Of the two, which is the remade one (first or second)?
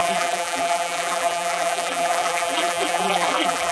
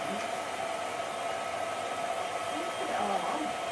first